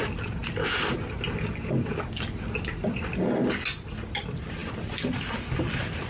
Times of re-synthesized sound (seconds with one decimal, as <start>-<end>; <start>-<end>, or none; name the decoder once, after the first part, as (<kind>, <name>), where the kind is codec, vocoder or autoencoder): none